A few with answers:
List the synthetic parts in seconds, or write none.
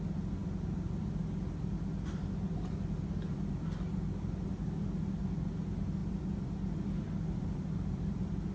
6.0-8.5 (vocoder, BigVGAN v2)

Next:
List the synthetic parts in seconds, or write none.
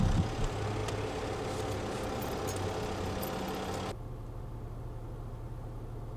none